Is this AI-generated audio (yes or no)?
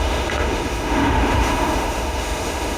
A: yes